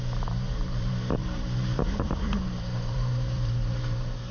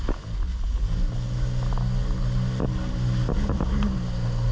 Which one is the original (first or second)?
second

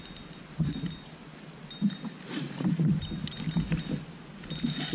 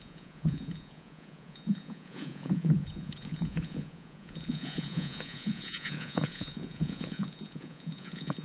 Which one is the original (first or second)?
first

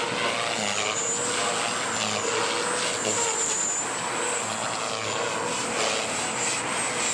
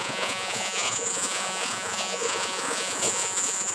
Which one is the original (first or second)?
first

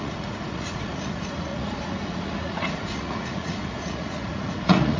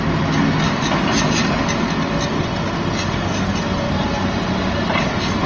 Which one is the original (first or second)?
second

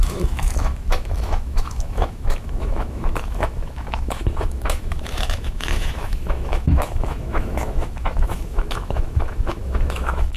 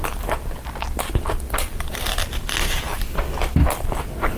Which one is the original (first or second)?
second